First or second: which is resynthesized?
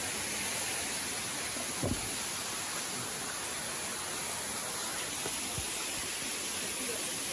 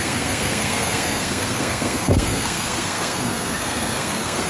second